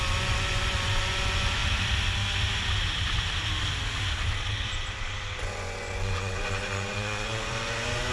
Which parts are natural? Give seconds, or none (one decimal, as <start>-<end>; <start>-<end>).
1.6-5.4